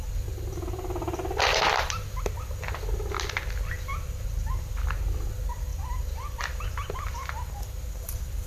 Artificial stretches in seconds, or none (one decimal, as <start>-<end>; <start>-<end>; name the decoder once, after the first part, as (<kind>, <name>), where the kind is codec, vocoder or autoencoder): 5.7-6.4 (vocoder, BigVGAN v2)